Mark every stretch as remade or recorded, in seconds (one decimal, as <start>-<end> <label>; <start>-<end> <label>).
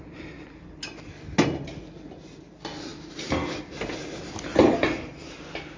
0.0-5.8 recorded